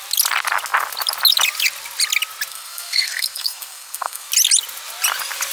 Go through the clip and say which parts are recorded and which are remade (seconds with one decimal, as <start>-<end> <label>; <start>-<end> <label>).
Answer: 0.0-2.5 recorded; 2.5-4.3 remade; 4.3-5.5 recorded